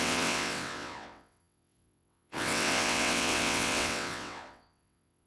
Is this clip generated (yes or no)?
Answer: yes